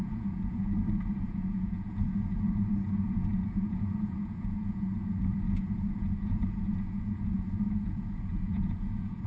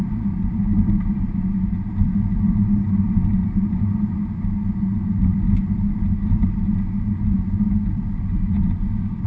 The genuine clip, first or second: second